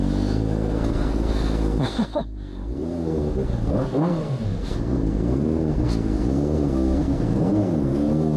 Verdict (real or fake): fake